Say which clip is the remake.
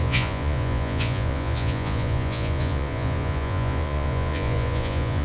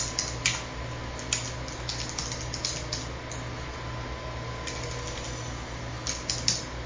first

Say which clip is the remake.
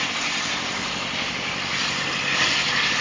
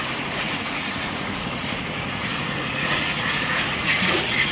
second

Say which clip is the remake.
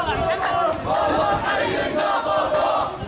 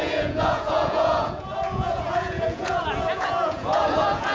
second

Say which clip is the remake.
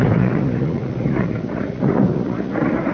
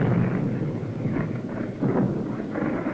first